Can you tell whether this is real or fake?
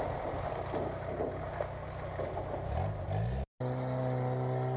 real